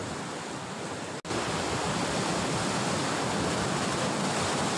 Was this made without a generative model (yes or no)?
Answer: yes